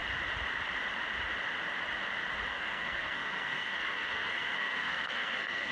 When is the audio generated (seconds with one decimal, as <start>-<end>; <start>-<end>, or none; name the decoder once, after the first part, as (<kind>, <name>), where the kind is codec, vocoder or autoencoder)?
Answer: 2.5-5.7 (codec, SNAC)